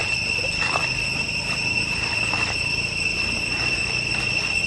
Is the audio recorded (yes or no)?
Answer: no